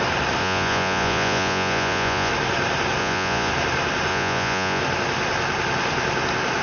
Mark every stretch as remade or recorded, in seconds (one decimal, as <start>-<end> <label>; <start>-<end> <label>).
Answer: 0.0-0.4 recorded; 0.4-2.3 remade; 2.3-3.0 recorded; 3.0-3.5 remade; 3.5-4.1 recorded; 4.1-4.8 remade; 4.8-6.6 recorded